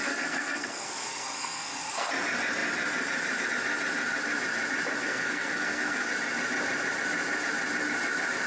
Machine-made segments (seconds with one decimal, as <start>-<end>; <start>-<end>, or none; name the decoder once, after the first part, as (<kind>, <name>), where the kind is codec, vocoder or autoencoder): 0.0-2.1 (codec, SNAC); 5.0-6.1